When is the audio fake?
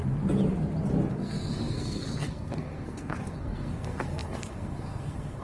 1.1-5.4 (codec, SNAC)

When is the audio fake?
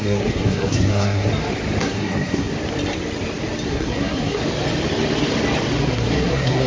0.0-1.3 (codec, SNAC); 1.8-2.5; 3.7-4.4; 5.8-6.7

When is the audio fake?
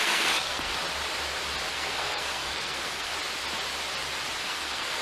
0.0-0.7 (codec, SNAC); 1.7-3.1; 4.4-5.0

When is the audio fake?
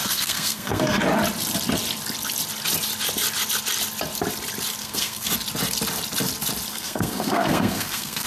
0.0-1.0 (codec, SNAC); 4.8-5.3; 6.7-8.3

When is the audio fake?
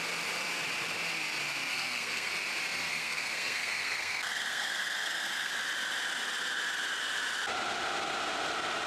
1.7-2.3 (codec, SNAC); 2.9-5.5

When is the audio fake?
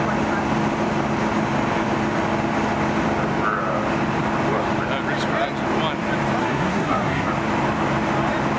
6.4-7.3 (codec, SNAC)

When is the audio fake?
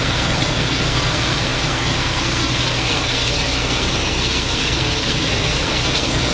0.0-6.3 (codec, SNAC)